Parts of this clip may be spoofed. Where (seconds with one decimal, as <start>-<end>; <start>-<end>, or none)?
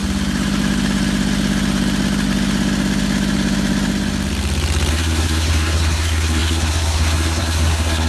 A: 4.9-8.1